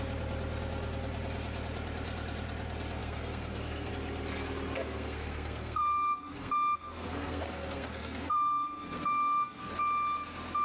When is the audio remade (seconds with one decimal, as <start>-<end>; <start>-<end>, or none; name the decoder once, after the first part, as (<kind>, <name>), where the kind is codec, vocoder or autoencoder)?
3.0-3.9 (codec, SNAC); 4.8-9.7